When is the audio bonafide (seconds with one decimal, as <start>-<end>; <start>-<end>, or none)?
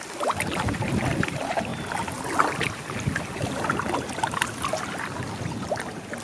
0.0-6.2